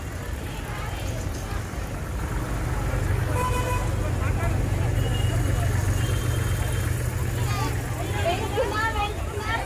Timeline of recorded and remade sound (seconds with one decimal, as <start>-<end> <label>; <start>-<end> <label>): 0.0-9.7 recorded